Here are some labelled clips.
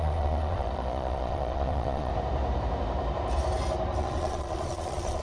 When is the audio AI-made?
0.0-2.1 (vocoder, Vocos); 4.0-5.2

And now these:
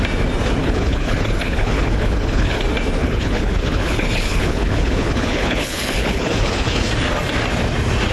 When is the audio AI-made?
0.6-2.6 (codec, HILCodec); 3.0-6.9

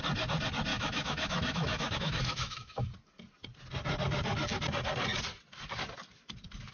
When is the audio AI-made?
0.7-2.8 (autoencoder, DAC-VAE)

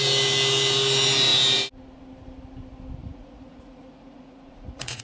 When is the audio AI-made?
3.0-5.0 (vocoder, Vocos)

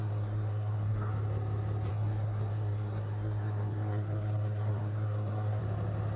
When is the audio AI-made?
0.0-1.1 (codec, SNAC); 1.9-5.6

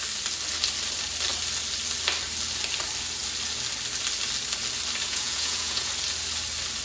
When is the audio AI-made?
5.1-5.9 (vocoder, Vocos)

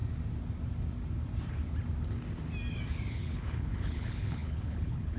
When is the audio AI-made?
3.1-5.2 (codec, HILCodec)

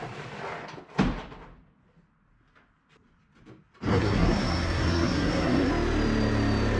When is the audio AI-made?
3.9-5.7 (codec, SNAC)